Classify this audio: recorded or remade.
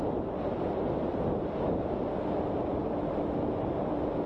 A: recorded